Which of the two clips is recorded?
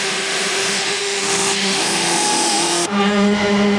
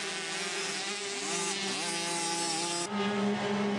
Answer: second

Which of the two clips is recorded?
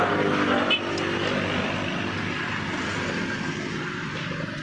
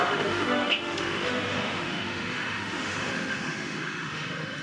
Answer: first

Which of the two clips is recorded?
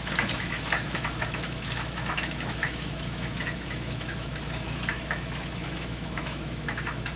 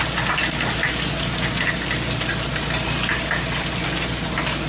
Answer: second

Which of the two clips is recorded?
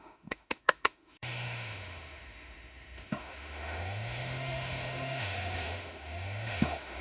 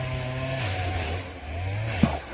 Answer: second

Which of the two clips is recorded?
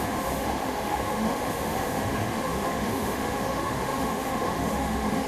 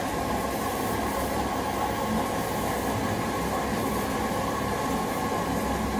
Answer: second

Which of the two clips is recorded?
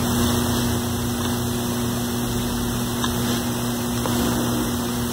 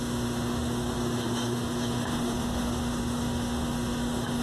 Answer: first